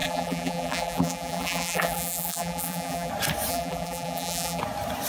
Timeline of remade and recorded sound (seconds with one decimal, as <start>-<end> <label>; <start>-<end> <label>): 0.0-3.1 remade; 3.1-3.5 recorded; 3.5-4.6 remade; 4.6-5.1 recorded